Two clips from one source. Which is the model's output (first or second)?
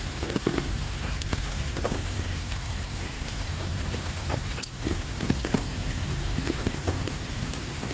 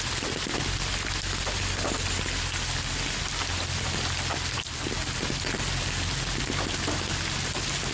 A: first